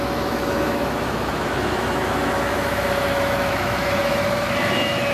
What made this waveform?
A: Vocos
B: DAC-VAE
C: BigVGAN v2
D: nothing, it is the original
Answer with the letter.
B